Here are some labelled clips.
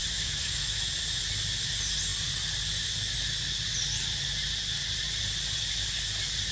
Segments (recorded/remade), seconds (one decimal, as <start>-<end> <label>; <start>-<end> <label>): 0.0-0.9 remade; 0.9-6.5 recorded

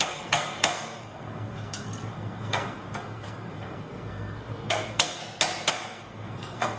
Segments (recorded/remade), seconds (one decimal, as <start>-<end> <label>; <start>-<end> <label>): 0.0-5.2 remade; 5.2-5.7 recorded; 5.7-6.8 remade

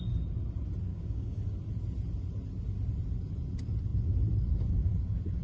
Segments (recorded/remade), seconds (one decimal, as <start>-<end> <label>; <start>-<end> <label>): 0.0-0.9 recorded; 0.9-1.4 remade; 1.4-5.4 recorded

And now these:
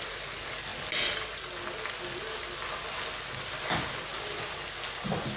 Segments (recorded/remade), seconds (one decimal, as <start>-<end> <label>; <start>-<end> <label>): 0.0-5.4 recorded